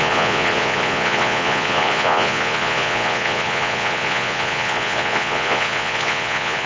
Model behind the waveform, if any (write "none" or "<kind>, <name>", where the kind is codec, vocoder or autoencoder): vocoder, Vocos